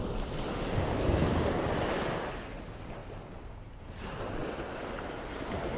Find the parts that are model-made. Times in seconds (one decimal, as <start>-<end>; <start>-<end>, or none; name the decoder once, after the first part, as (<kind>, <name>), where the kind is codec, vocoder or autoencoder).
none